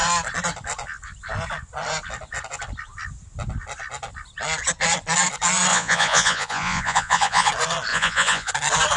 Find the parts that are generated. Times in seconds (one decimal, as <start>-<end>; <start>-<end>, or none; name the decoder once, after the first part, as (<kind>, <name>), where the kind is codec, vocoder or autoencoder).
5.7-7.5 (vocoder, Vocos); 7.9-8.5